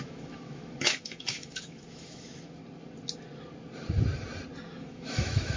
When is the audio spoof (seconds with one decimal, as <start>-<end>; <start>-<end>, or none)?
0.0-2.6; 4.8-5.6